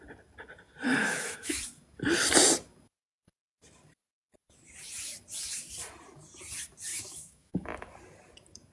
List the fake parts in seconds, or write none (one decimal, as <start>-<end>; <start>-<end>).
1.0-1.6; 6.9-7.5